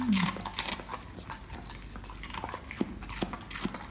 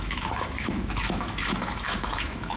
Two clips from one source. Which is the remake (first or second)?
second